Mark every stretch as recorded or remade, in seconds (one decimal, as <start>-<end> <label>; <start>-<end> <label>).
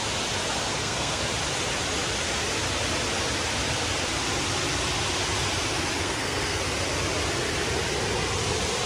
0.0-0.7 recorded; 0.7-1.2 remade; 1.2-6.0 recorded; 6.0-6.6 remade; 6.6-8.9 recorded